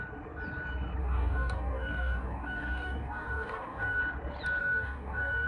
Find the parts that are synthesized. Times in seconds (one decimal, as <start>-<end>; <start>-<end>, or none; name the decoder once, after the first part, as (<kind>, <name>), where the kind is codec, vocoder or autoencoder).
1.0-4.0 (codec, DAC); 4.6-5.5

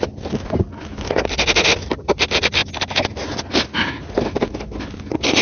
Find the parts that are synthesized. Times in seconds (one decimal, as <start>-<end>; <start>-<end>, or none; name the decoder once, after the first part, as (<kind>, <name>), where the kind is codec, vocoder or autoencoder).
none

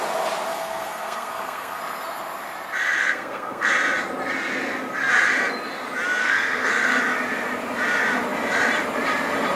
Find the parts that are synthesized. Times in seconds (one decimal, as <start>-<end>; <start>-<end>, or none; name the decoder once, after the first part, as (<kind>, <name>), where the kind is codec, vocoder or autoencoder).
0.5-1.8 (codec, SNAC); 3.0-3.7; 6.2-7.0

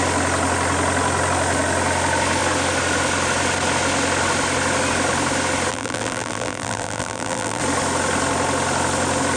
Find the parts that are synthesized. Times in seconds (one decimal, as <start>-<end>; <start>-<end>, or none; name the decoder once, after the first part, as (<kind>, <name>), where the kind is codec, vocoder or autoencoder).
5.7-7.6 (vocoder, BigVGAN v2)

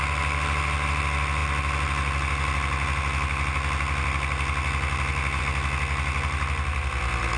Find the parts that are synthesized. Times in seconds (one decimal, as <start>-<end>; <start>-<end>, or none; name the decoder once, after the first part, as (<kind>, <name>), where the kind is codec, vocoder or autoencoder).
none